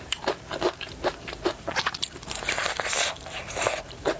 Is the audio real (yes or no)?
no